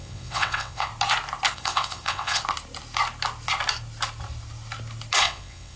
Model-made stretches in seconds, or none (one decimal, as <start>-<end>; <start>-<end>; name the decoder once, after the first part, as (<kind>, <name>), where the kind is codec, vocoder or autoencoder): 0.0-0.9 (vocoder, WaveNeXt); 1.5-2.4; 5.2-5.8

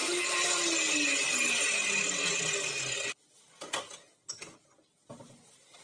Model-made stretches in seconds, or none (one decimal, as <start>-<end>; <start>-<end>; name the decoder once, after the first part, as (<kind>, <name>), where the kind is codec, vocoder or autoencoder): none